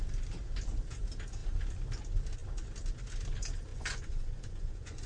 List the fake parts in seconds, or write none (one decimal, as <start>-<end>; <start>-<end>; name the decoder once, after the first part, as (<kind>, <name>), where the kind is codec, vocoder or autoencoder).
3.7-5.1 (vocoder, Vocos)

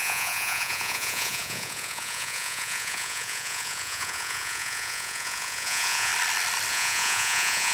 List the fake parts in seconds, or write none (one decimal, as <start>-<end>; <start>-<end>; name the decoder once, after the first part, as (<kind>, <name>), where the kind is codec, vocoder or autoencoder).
0.0-6.1 (vocoder, Vocos); 6.7-7.7

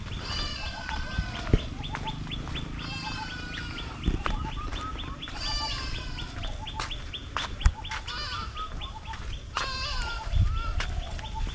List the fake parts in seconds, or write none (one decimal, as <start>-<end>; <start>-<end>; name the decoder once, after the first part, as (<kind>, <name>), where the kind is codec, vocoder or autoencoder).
0.5-1.1 (vocoder, Vocos)

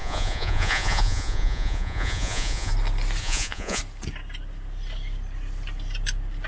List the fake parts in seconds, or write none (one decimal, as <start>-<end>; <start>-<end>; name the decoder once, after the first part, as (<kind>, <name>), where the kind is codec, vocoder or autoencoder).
0.0-2.7 (vocoder, Vocos); 3.2-3.8

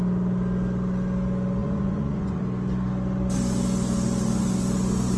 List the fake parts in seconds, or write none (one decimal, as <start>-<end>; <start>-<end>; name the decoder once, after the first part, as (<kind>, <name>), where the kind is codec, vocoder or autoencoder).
1.6-2.4 (vocoder, Vocos)

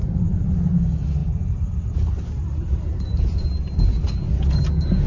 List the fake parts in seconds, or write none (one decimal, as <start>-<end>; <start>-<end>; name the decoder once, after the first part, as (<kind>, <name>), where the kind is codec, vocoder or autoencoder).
none